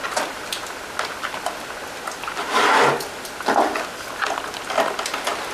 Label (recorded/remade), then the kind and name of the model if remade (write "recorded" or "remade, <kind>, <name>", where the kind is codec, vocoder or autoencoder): recorded